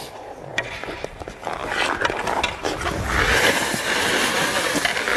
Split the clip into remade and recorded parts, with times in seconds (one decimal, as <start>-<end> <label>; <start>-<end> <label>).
0.0-0.5 recorded; 0.5-1.1 remade; 1.1-5.2 recorded